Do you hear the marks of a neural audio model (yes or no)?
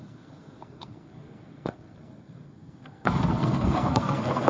yes